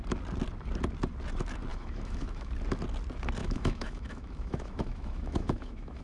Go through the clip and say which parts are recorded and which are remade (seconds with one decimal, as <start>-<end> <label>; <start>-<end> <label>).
0.0-1.7 recorded; 1.7-2.5 remade; 2.5-3.4 recorded; 3.4-6.0 remade